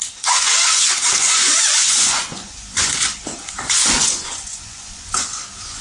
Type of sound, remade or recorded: remade